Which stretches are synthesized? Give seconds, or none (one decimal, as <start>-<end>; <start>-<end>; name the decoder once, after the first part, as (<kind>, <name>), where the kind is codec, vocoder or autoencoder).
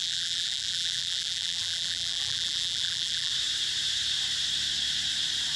0.0-3.3 (vocoder, BigVGAN v2)